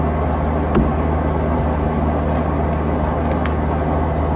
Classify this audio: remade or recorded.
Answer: recorded